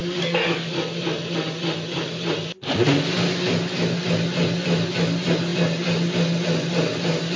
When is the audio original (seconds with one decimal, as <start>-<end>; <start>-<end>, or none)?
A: 0.7-7.4